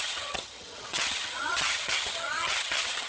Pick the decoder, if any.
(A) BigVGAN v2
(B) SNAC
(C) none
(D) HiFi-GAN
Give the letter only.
D